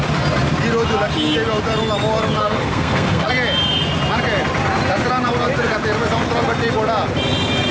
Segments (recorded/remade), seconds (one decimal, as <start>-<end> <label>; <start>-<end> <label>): 0.0-2.4 recorded; 2.4-3.3 remade; 3.3-7.7 recorded